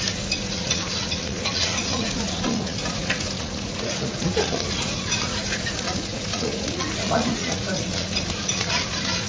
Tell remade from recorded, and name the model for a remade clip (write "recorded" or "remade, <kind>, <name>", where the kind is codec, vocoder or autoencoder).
remade, vocoder, Vocos